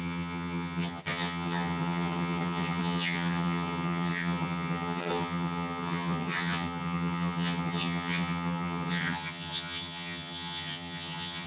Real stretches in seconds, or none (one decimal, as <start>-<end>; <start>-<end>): none